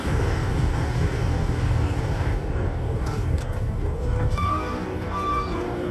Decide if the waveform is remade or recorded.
remade